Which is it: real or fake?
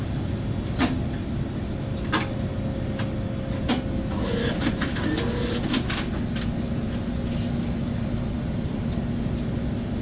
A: real